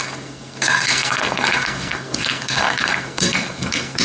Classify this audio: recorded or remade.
remade